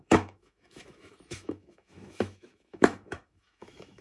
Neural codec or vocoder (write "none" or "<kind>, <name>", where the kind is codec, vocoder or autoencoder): autoencoder, DAC-VAE